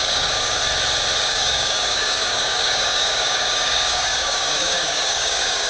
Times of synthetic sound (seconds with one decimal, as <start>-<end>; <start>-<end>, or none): 0.0-0.6; 1.2-5.7